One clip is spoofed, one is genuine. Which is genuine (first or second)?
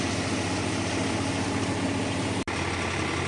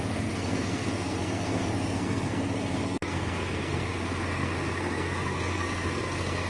first